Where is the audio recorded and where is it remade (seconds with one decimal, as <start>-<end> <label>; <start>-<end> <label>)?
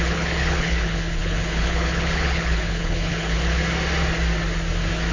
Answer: 0.0-3.6 remade; 3.6-5.1 recorded